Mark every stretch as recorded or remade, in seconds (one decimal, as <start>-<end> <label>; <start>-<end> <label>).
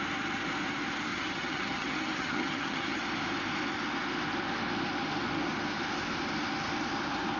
0.0-1.1 recorded; 1.1-3.0 remade; 3.0-7.4 recorded